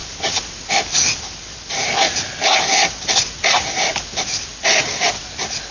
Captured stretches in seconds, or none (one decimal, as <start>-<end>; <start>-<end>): 0.0-5.7